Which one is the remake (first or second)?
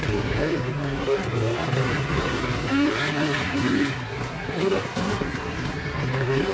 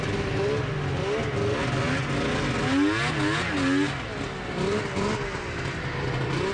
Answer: first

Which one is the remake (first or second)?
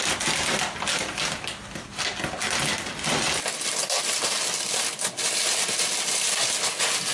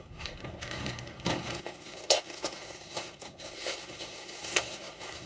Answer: second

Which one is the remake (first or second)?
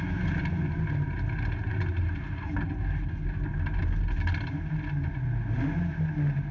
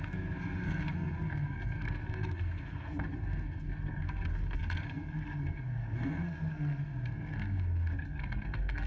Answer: second